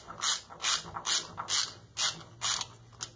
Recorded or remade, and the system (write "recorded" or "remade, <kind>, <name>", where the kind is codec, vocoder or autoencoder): recorded